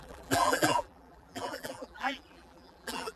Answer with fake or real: fake